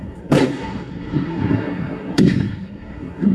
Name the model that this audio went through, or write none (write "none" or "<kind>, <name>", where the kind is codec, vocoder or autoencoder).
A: codec, SNAC